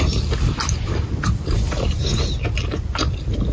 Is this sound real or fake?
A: real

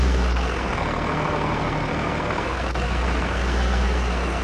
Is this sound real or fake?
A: fake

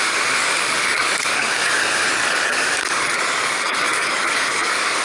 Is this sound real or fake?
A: fake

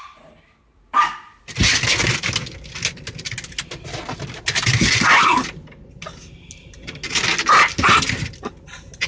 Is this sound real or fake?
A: real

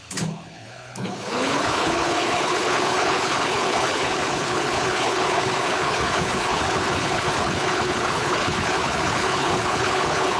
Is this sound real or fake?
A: fake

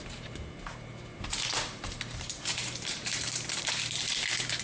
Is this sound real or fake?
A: fake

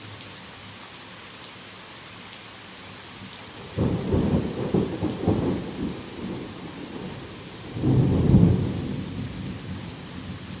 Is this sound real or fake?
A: real